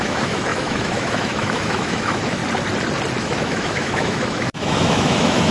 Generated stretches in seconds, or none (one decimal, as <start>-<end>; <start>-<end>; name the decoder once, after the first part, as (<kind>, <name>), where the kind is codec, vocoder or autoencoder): 0.0-2.4 (autoencoder, DAC-VAE); 3.2-5.5